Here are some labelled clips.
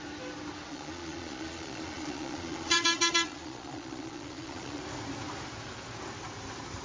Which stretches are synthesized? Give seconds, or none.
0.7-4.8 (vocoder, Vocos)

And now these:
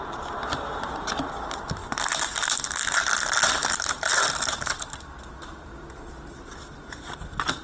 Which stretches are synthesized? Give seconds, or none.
none

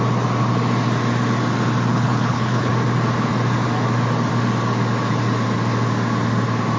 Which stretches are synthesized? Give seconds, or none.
1.9-2.7 (codec, HILCodec)